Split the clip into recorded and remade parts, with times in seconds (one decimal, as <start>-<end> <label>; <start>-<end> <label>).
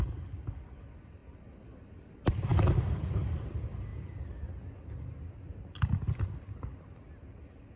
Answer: 0.0-7.8 recorded